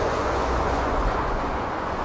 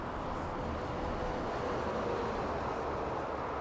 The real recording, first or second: second